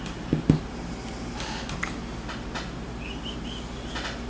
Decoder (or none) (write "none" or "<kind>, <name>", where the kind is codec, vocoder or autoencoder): none